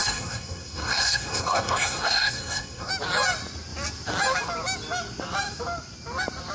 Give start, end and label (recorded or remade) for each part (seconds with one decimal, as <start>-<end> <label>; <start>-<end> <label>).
0.0-2.9 remade; 2.9-6.5 recorded